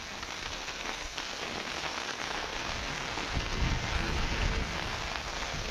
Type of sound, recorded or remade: remade